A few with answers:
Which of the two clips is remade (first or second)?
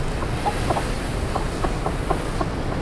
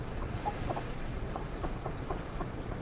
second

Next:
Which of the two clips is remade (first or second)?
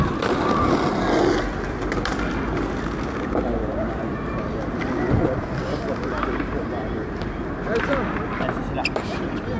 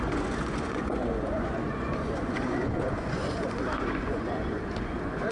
second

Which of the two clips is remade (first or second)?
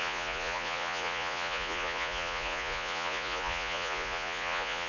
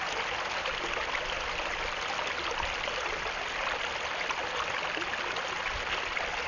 first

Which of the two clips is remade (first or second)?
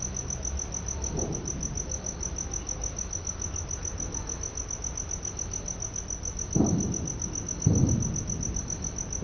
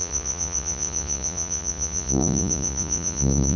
second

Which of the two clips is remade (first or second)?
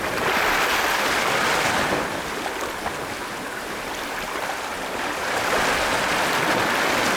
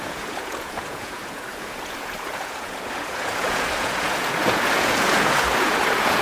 second